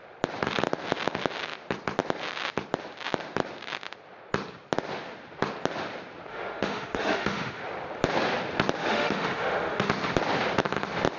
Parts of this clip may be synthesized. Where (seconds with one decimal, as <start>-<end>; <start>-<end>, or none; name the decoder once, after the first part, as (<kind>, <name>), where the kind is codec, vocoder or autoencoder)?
6.3-7.6 (autoencoder, DAC-VAE); 8.8-9.9

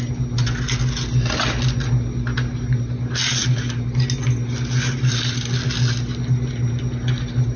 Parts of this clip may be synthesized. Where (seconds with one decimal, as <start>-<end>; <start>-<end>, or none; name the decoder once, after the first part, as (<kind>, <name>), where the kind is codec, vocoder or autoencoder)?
none